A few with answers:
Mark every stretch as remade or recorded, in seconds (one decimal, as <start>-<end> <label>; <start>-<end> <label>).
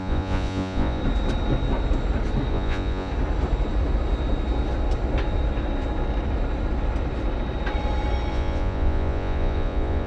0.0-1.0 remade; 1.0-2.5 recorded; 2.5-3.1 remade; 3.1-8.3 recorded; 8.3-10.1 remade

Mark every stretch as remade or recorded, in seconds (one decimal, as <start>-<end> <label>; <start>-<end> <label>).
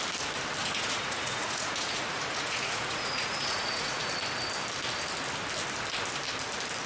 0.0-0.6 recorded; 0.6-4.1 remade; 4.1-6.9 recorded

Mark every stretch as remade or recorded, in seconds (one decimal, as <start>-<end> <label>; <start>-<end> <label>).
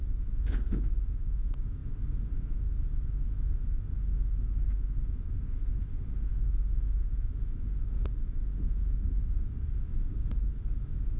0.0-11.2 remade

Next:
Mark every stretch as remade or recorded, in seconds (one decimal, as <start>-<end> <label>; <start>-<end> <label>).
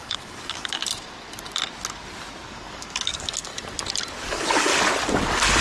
0.0-0.8 remade; 0.8-2.5 recorded; 2.5-3.5 remade; 3.5-4.3 recorded; 4.3-4.7 remade; 4.7-5.6 recorded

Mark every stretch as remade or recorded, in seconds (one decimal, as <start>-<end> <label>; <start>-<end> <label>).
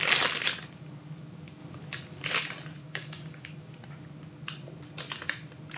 0.0-2.8 recorded; 2.8-3.5 remade; 3.5-5.8 recorded